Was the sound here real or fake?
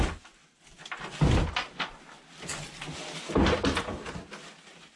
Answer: real